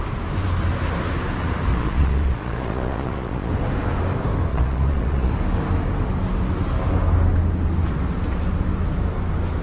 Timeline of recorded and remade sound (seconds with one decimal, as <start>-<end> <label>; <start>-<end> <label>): 0.0-1.7 recorded; 1.7-3.5 remade; 3.5-4.5 recorded; 4.5-5.3 remade; 5.3-9.6 recorded